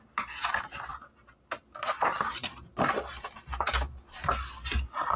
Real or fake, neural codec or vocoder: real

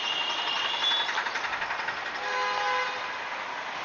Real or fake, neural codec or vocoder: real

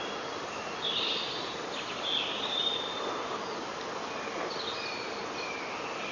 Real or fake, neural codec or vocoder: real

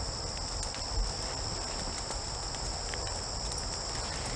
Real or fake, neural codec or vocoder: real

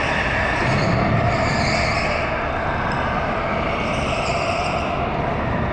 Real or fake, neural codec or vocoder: real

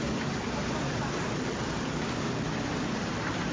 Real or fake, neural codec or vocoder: real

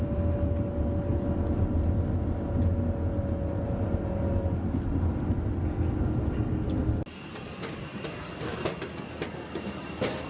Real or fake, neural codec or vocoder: real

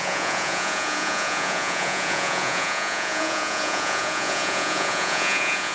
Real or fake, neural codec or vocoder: fake, vocoder, Vocos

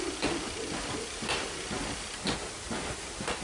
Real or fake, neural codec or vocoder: fake, vocoder, BigVGAN v2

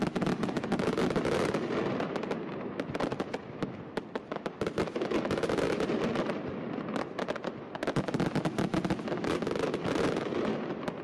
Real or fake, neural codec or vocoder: real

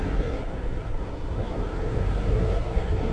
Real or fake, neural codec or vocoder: fake, codec, SNAC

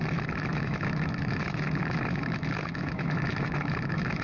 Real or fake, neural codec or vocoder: fake, autoencoder, DAC-VAE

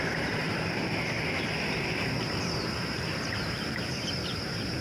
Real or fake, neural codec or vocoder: fake, vocoder, BigVGAN v2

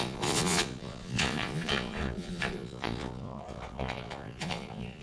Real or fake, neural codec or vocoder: fake, vocoder, Vocos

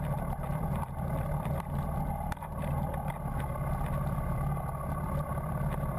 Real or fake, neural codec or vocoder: fake, vocoder, BigVGAN v2